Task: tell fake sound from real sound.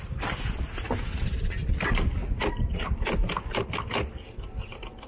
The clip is real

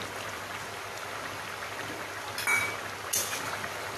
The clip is real